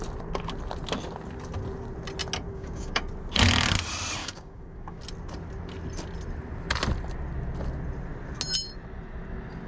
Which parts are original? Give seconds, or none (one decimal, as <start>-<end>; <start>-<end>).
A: 0.0-2.5; 3.0-4.2; 5.0-9.7